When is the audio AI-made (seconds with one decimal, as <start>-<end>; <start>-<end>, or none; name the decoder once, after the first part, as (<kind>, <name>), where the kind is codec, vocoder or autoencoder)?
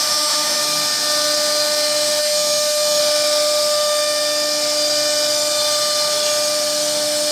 0.0-0.6 (autoencoder, DAC-VAE); 2.2-3.0